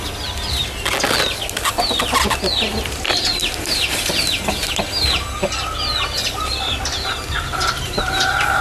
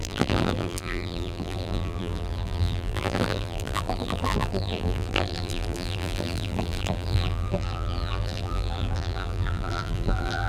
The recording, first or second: first